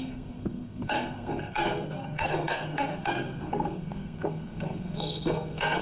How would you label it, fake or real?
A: fake